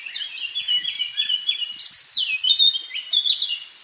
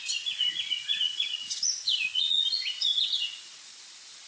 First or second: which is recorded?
first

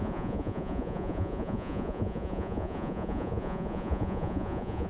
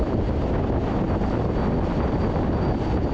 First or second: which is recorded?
second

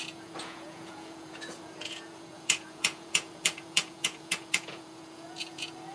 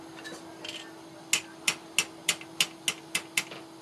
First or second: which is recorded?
second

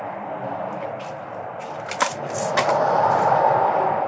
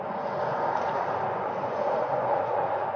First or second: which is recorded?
first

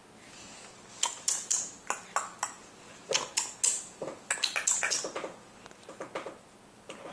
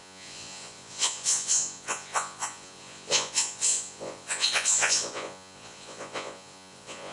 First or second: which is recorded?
first